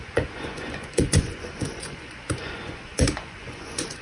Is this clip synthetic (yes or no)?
yes